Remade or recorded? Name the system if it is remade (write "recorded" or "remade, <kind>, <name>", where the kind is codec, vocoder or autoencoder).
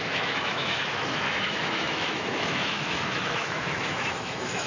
remade, autoencoder, DAC-VAE